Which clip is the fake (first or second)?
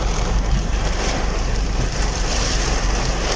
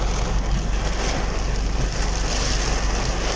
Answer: first